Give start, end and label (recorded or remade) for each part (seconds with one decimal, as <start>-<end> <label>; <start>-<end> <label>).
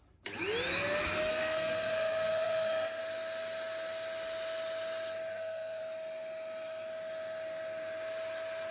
0.0-1.3 recorded; 1.3-3.0 remade; 3.0-5.3 recorded; 5.3-5.8 remade; 5.8-8.7 recorded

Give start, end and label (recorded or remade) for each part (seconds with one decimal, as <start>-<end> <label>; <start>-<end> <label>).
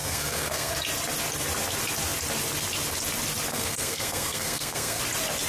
0.0-0.7 remade; 0.7-3.5 recorded; 3.5-5.0 remade; 5.0-5.5 recorded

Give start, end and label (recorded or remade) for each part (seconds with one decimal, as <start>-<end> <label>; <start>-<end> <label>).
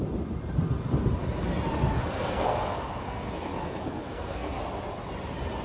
0.0-2.0 recorded; 2.0-4.6 remade; 4.6-5.6 recorded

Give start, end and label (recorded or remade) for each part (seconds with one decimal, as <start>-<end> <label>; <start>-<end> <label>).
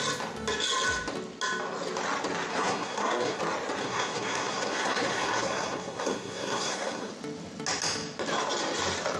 0.0-2.5 recorded; 2.5-3.4 remade; 3.4-3.8 recorded; 3.8-7.1 remade; 7.1-9.2 recorded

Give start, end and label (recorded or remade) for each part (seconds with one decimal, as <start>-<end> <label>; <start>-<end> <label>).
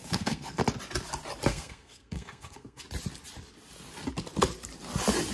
0.0-0.6 remade; 0.6-1.5 recorded; 1.5-2.8 remade; 2.8-5.3 recorded